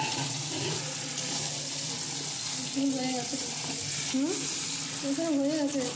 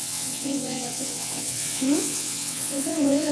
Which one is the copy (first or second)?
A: second